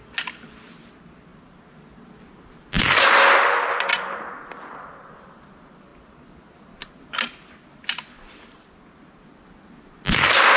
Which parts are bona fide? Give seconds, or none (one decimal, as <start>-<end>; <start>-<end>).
0.0-10.6